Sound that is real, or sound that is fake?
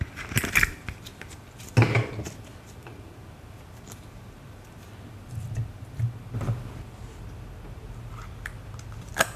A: real